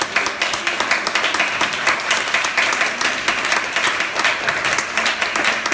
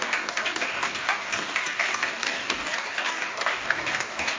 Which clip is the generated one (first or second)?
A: second